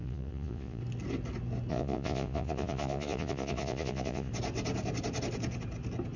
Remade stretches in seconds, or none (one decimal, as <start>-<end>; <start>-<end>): 0.0-0.8; 1.7-4.3